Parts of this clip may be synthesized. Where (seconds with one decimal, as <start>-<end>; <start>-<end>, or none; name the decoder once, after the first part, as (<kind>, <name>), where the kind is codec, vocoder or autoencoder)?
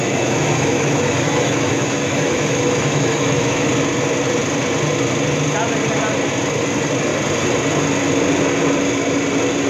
0.0-3.7 (autoencoder, DAC-VAE)